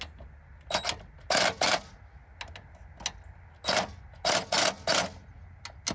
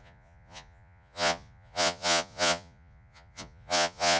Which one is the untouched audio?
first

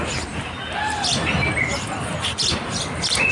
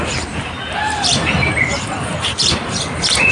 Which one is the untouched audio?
first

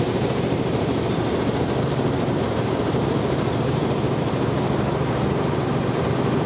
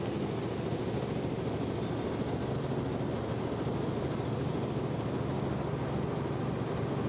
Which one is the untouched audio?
second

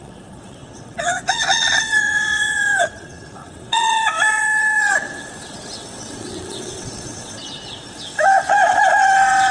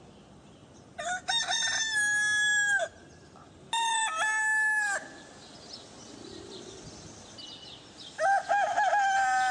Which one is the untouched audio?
second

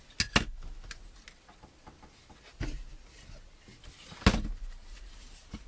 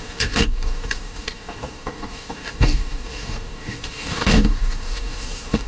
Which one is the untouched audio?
first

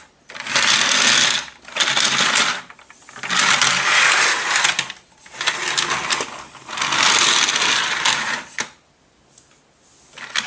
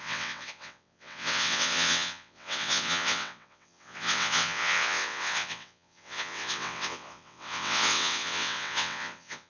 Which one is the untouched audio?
first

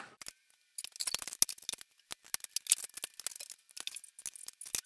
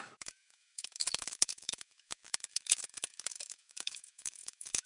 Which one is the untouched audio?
first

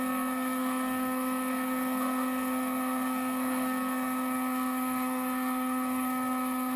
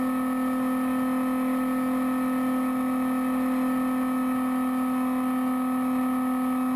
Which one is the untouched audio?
second